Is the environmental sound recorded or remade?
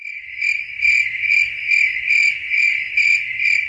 recorded